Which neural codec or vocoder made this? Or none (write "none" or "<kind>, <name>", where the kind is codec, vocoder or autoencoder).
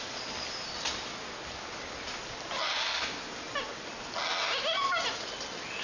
none